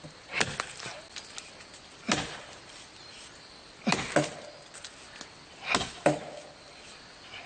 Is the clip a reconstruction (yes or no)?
no